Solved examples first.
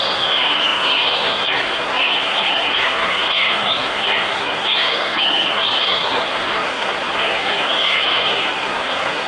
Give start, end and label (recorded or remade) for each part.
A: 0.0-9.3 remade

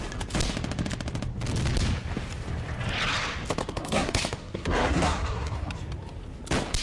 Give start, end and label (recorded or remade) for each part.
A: 0.0-3.6 recorded; 3.6-5.7 remade; 5.7-6.8 recorded

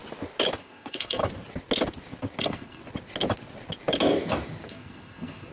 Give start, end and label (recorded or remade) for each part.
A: 0.0-0.6 recorded; 0.6-1.2 remade; 1.2-2.4 recorded; 2.4-2.8 remade; 2.8-4.7 recorded; 4.7-5.5 remade

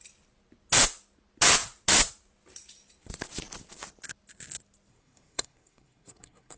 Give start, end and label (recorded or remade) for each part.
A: 0.0-4.9 recorded; 4.9-6.6 remade

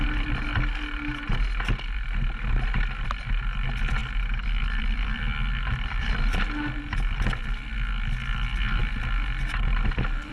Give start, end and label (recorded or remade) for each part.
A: 0.0-10.3 recorded

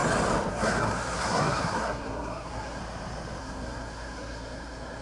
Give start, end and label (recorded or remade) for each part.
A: 0.0-0.5 recorded; 0.5-2.8 remade; 2.8-3.4 recorded; 3.4-5.0 remade